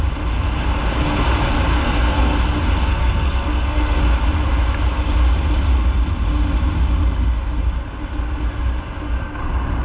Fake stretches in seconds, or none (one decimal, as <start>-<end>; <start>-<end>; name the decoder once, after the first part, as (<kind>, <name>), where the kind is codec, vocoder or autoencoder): 1.7-2.4 (codec, SNAC); 2.9-4.0